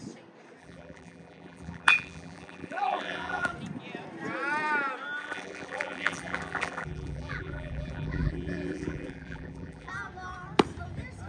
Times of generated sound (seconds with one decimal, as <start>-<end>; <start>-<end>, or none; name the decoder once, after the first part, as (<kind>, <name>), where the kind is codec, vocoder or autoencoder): 0.6-3.5 (vocoder, BigVGAN v2); 5.2-9.9